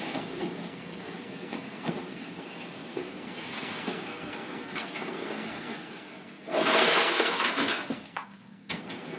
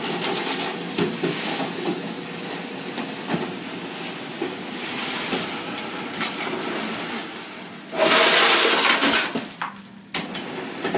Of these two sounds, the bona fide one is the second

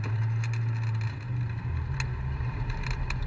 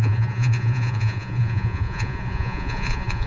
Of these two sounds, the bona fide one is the first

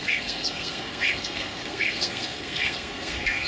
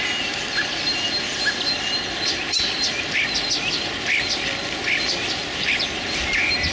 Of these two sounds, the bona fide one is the second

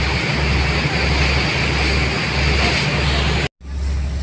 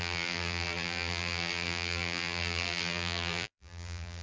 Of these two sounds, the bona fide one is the first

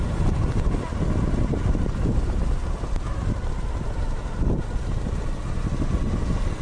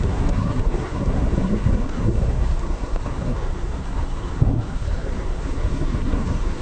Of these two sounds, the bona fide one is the first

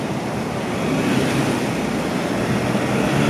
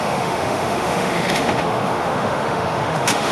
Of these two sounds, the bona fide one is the first